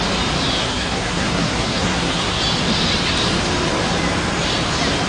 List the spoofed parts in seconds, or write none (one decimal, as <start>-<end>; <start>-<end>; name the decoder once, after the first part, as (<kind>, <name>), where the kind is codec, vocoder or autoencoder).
0.6-2.4 (codec, SNAC)